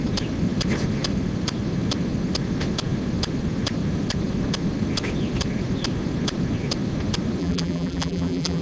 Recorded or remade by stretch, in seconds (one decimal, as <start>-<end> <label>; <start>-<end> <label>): 0.0-7.4 recorded; 7.4-8.6 remade